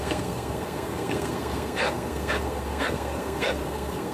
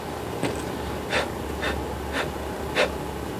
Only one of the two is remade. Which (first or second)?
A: first